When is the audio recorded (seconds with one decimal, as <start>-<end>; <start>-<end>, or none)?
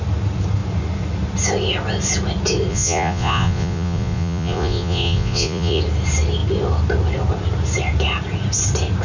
0.0-2.7; 5.8-9.0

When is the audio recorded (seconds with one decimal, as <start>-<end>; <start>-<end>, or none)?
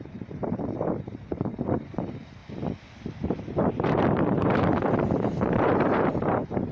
2.4-3.8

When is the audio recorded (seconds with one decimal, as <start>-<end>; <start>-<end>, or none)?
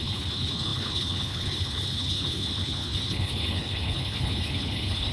none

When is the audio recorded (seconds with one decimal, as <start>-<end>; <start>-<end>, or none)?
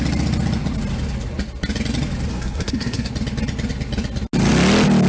0.0-2.3; 3.1-5.1